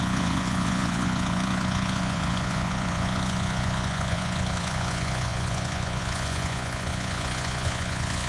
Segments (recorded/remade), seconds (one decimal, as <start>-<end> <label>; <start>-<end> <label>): 0.0-8.3 remade